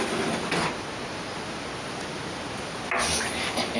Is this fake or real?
real